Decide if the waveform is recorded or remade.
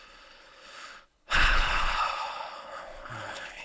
remade